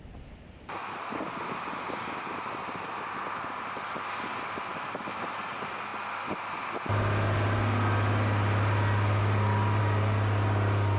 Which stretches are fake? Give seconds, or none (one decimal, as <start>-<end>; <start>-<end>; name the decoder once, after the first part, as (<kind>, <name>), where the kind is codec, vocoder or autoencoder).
0.8-3.8 (vocoder, BigVGAN v2); 4.7-5.4